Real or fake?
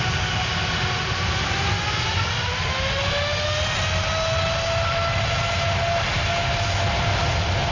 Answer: real